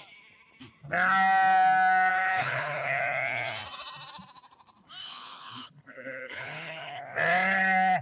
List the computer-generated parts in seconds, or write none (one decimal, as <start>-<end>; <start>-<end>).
2.1-3.0; 5.0-7.0